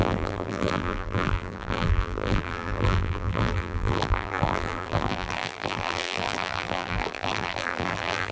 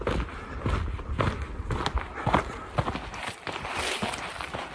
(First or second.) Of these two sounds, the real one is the second